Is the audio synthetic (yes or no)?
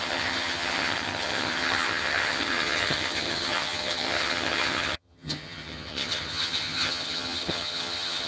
yes